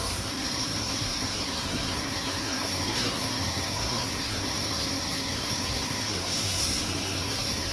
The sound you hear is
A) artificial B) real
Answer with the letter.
A